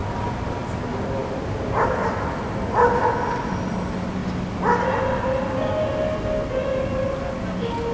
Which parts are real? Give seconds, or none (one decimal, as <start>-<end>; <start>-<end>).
0.0-7.9